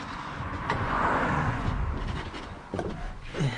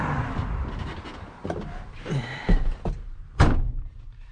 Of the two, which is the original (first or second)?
second